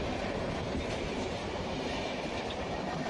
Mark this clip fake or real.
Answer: fake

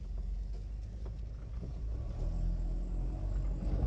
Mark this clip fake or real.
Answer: real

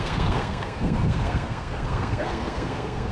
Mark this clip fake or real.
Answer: fake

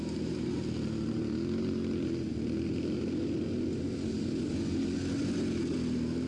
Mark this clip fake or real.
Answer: real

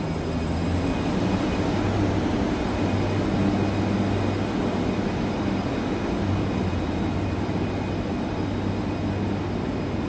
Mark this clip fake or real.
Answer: real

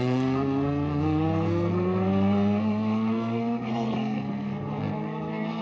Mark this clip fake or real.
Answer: fake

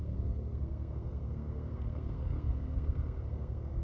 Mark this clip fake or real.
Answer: fake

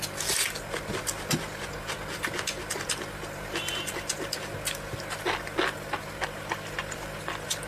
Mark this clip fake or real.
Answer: real